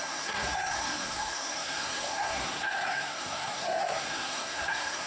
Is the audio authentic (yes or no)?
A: no